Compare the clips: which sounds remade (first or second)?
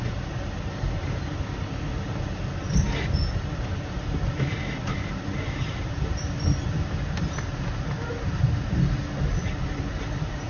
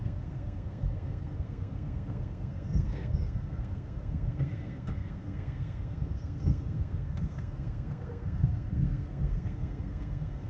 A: second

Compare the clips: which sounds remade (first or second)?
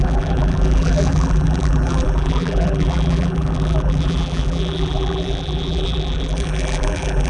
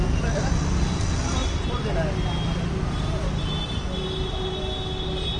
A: first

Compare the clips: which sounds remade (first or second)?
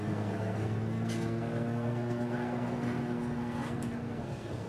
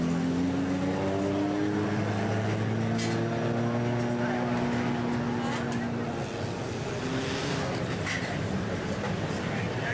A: first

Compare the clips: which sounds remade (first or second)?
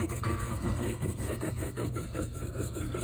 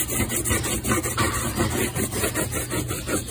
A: first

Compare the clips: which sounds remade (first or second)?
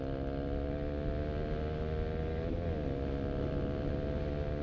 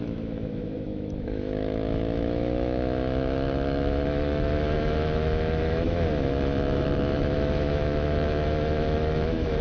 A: second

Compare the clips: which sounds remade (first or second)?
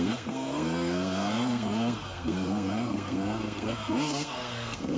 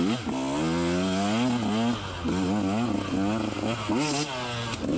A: first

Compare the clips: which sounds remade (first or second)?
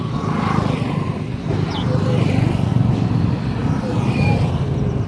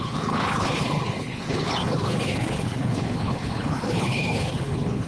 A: second